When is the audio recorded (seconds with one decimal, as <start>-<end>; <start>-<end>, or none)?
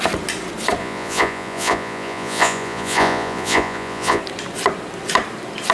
0.0-0.8; 4.2-5.7